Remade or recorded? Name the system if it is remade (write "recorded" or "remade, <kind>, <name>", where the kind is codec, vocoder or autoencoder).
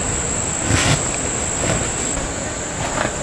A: recorded